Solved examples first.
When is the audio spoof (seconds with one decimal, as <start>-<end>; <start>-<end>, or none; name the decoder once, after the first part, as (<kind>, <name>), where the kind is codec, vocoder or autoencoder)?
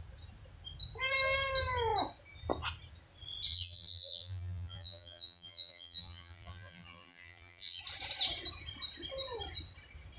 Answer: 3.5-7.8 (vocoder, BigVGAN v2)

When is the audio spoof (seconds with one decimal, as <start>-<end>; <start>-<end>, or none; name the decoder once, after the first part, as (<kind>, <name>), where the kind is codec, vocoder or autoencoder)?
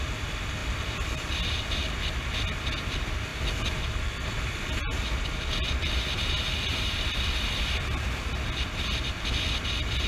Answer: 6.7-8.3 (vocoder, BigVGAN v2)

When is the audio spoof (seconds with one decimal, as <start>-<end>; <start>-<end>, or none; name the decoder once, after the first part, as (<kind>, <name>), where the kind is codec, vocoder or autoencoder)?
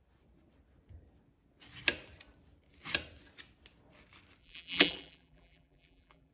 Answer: 4.4-6.3 (vocoder, BigVGAN v2)